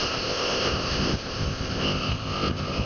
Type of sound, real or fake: fake